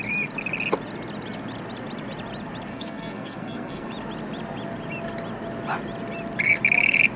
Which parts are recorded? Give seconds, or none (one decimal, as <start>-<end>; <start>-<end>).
0.0-2.7; 3.9-7.2

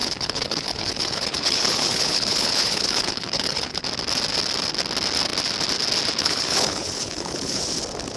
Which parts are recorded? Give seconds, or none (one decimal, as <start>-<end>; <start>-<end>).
3.8-6.2; 7.6-8.2

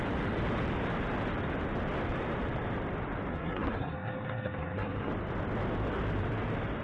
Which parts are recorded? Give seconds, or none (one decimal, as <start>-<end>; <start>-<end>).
0.0-3.3; 5.1-6.8

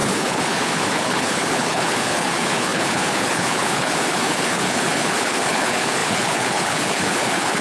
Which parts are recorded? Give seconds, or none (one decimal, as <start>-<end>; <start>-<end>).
none

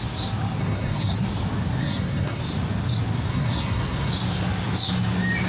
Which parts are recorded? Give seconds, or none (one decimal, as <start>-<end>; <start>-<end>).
0.0-0.6; 1.1-1.8; 2.4-3.3; 4.1-5.5

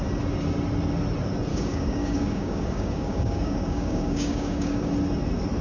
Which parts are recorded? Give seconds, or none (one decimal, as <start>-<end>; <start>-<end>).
0.0-1.5; 4.9-5.6

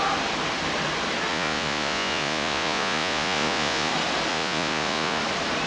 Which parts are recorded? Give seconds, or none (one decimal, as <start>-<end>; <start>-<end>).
0.0-1.3; 3.9-4.3; 5.2-5.7

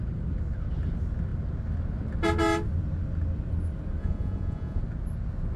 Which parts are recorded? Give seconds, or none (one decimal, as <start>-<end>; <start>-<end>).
0.0-4.0; 4.8-5.6